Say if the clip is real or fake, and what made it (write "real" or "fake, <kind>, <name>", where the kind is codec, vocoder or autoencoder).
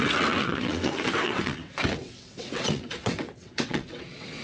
fake, vocoder, WaveNeXt